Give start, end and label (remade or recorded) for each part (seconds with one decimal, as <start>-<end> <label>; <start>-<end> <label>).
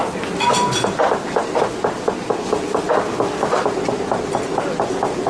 0.0-5.3 recorded